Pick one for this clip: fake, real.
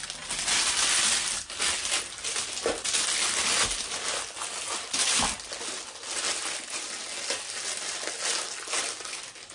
real